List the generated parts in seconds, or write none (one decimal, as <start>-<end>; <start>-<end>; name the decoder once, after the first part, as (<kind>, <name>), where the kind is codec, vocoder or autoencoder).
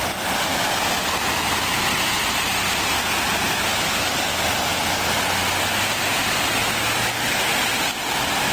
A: none